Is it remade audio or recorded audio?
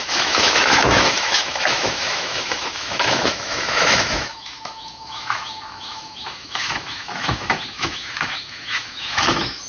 remade